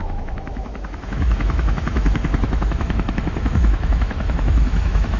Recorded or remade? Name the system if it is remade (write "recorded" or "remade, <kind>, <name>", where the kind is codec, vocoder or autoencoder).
remade, autoencoder, DAC-VAE